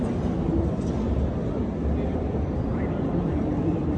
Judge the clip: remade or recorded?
remade